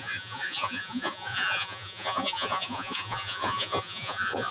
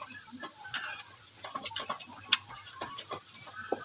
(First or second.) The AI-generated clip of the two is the first